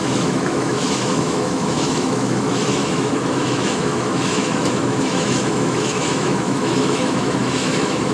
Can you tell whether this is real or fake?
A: fake